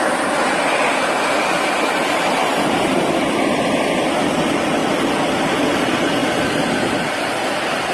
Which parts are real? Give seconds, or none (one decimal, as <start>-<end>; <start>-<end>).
0.0-7.9